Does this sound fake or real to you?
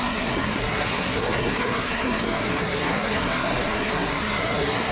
fake